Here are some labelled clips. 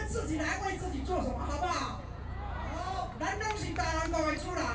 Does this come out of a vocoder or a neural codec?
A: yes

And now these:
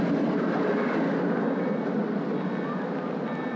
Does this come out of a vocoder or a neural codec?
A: no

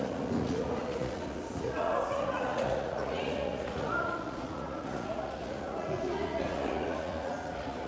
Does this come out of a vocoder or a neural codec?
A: yes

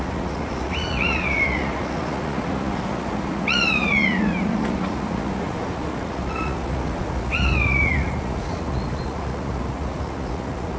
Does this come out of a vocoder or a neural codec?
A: yes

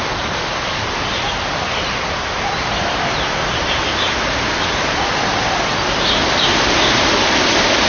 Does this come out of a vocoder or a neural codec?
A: no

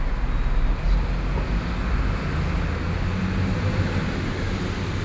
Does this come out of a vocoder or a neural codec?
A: no